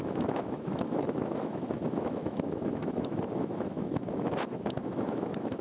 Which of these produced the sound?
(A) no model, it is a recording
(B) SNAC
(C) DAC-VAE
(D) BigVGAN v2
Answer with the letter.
C